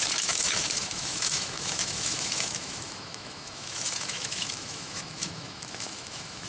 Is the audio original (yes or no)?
no